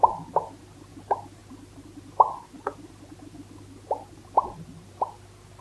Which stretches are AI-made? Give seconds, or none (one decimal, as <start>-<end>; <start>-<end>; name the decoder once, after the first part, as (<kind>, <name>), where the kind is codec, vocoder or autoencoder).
1.4-2.9 (vocoder, BigVGAN v2)